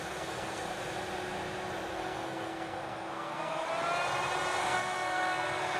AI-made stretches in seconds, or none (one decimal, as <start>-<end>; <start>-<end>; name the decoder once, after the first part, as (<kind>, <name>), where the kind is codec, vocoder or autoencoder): 0.0-0.6 (codec, SNAC); 1.9-3.7; 4.6-5.8